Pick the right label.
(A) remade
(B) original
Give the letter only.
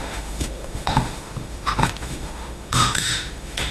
A